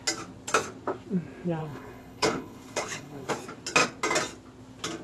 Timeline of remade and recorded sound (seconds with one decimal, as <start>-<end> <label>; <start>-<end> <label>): 0.0-1.6 recorded; 1.6-3.3 remade; 3.3-5.0 recorded